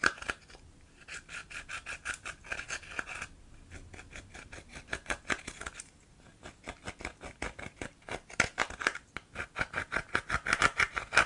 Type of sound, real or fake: real